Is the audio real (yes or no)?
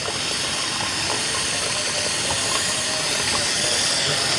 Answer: yes